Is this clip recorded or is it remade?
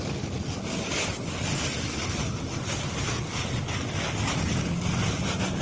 recorded